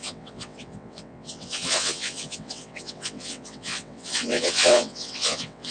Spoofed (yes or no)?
yes